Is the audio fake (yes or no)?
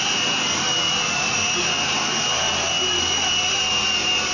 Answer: no